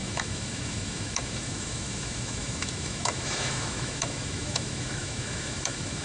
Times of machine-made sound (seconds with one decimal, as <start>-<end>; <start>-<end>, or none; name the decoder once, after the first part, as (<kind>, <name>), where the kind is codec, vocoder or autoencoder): 0.0-6.0 (autoencoder, DAC-VAE)